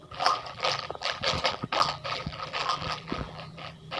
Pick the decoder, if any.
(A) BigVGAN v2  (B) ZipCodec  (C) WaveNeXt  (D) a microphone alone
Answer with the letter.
A